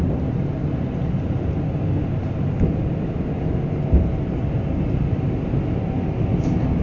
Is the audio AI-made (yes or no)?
yes